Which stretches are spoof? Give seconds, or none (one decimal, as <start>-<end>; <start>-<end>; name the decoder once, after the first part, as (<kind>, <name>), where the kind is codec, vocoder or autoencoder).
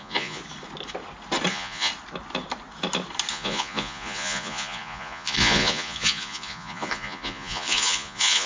0.0-0.4 (vocoder, Vocos); 1.5-1.9; 3.3-8.5